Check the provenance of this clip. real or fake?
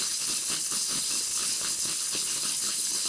fake